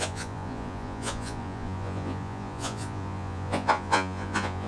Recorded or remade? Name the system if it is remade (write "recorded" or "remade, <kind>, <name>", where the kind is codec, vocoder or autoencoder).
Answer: remade, vocoder, Vocos